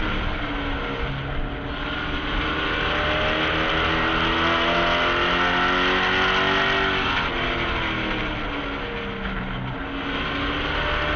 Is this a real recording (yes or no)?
yes